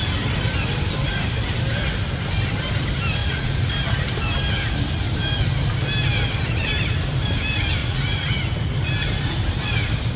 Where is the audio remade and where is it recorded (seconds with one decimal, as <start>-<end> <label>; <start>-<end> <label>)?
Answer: 0.0-3.2 recorded; 3.2-3.7 remade; 3.7-7.8 recorded; 7.8-8.4 remade; 8.4-10.2 recorded